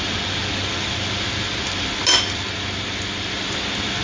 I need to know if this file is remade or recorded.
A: recorded